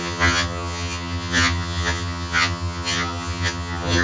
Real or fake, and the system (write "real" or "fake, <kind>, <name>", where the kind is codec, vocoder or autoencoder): fake, vocoder, HiFi-GAN